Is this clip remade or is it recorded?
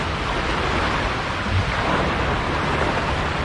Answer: recorded